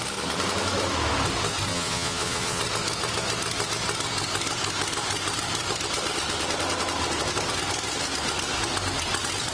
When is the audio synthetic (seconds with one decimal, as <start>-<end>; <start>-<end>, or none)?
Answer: 1.7-2.6